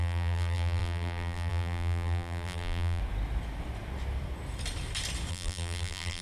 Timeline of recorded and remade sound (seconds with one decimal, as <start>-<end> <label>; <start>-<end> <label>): 0.0-3.0 remade; 3.0-5.3 recorded; 5.3-6.2 remade